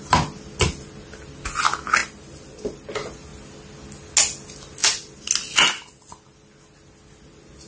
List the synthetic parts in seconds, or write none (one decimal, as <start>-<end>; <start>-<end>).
none